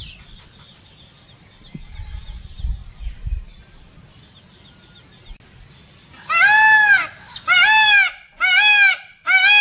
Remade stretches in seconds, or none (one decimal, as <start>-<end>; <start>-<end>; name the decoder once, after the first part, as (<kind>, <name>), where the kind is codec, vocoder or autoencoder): none